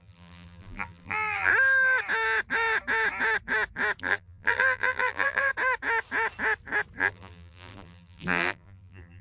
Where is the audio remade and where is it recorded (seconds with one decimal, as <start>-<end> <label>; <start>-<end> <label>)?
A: 0.0-1.5 remade; 1.5-4.0 recorded; 4.0-5.5 remade; 5.5-7.0 recorded; 7.0-9.2 remade